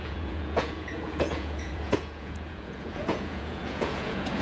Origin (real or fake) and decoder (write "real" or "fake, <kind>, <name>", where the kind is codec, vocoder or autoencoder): fake, vocoder, Vocos